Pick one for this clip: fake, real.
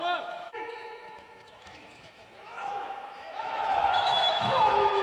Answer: fake